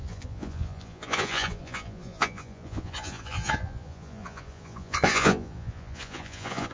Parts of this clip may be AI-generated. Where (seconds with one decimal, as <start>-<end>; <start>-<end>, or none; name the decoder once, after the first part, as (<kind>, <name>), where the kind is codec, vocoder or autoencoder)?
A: 0.0-6.7 (vocoder, Vocos)